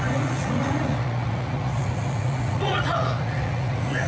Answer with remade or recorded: remade